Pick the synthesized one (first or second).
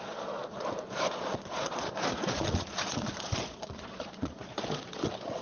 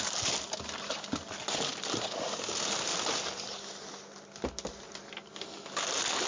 first